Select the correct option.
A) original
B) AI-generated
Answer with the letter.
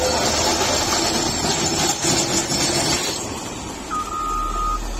A